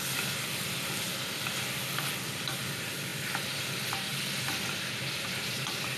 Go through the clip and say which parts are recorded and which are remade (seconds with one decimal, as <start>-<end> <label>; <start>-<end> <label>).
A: 0.0-6.0 recorded